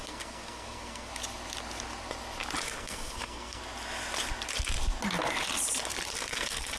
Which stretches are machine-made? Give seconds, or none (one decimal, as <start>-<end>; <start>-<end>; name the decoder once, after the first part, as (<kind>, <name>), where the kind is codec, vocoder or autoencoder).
0.0-1.1 (codec, SNAC); 2.6-3.6; 6.1-6.8